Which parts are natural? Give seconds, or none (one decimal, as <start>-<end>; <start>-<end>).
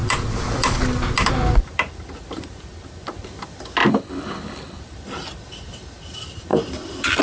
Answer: 0.0-3.9; 4.8-7.2